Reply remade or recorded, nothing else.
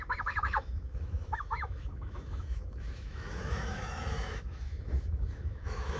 remade